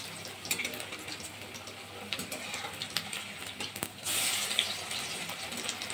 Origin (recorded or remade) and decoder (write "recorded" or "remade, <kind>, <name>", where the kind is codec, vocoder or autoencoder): recorded